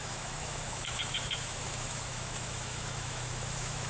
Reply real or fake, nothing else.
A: fake